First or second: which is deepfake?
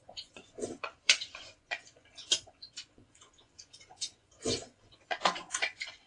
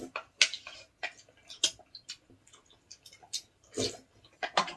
first